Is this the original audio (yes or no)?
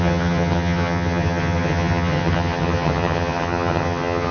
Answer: no